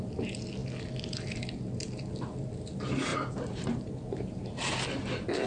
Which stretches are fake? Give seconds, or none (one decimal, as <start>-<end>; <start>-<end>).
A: 3.1-4.7